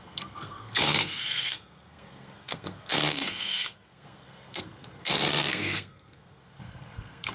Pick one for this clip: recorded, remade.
remade